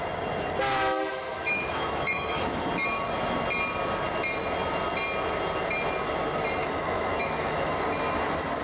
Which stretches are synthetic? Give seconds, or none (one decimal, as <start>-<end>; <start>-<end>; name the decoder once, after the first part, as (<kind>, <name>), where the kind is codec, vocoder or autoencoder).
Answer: 1.3-2.7 (autoencoder, DAC-VAE); 6.6-7.7